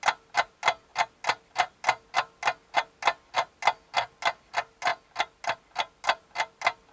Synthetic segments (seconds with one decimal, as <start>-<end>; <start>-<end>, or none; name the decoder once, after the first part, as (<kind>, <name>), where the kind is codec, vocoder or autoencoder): none